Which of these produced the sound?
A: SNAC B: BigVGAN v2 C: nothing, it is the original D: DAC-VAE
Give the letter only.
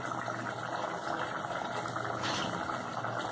C